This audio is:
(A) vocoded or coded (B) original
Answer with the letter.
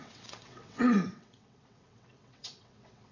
A